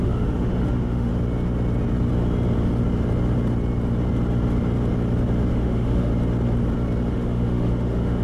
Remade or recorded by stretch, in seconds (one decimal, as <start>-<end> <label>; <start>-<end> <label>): 0.0-1.1 remade; 1.1-5.5 recorded; 5.5-6.1 remade; 6.1-7.1 recorded; 7.1-8.2 remade